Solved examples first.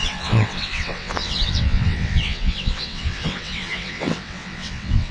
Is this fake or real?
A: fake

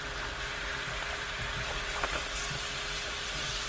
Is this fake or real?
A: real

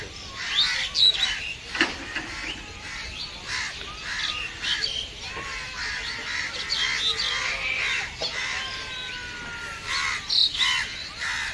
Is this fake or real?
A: real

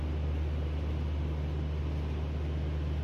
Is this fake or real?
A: real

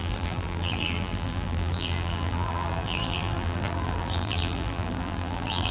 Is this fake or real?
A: fake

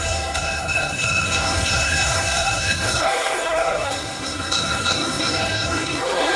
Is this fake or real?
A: fake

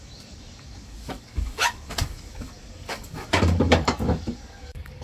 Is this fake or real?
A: fake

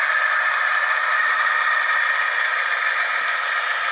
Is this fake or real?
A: real